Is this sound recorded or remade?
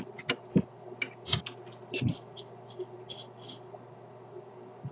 recorded